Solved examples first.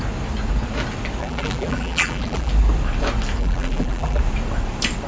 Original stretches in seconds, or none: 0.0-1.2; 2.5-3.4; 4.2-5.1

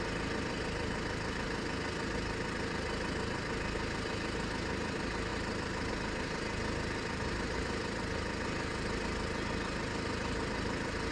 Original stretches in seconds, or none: 0.0-11.1

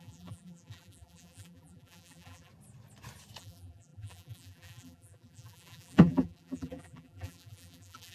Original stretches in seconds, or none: 2.5-3.4

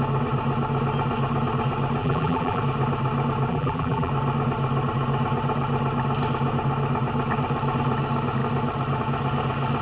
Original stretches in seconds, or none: 0.0-2.0; 2.6-3.5; 4.1-9.8